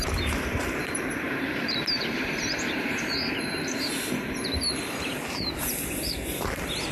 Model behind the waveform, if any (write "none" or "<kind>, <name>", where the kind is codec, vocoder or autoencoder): vocoder, BigVGAN v2